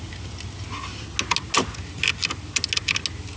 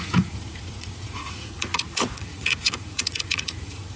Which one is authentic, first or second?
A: first